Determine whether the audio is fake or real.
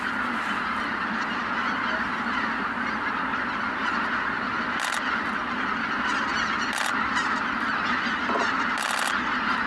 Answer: real